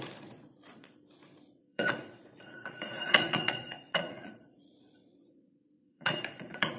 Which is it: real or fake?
fake